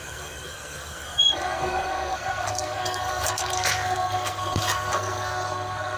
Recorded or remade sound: remade